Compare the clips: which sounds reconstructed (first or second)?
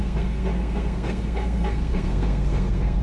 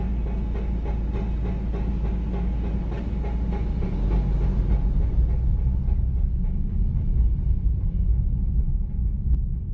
first